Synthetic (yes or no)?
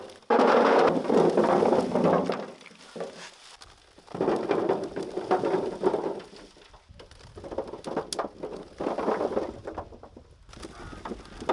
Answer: no